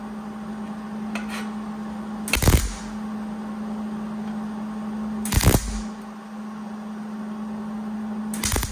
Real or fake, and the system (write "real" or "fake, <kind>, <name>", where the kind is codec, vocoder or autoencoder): real